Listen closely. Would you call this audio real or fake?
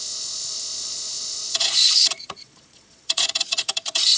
fake